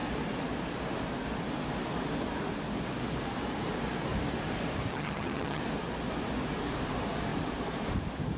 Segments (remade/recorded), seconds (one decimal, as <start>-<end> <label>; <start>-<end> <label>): 0.0-4.9 recorded; 4.9-5.6 remade; 5.6-8.4 recorded